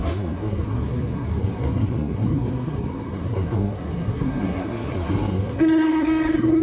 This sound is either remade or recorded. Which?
remade